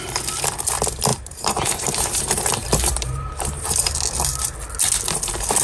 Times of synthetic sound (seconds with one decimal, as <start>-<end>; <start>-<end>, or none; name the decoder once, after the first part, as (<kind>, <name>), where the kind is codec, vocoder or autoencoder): 1.1-2.2 (vocoder, BigVGAN v2); 2.6-3.3